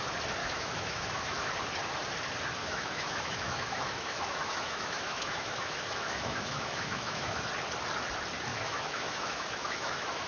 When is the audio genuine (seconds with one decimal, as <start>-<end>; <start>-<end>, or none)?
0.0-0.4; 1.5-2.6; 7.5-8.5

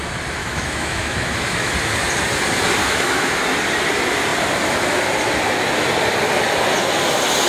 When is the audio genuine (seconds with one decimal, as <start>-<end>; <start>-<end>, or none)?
0.0-0.4; 1.7-2.8; 3.4-7.5

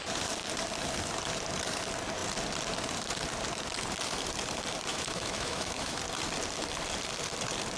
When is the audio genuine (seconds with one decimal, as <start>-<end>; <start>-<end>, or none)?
0.0-4.9; 6.0-7.8

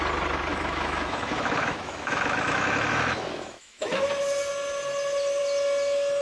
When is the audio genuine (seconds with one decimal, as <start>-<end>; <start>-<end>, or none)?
0.0-0.5; 4.1-6.2